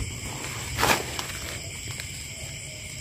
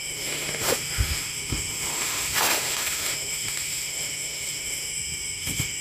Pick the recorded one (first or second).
first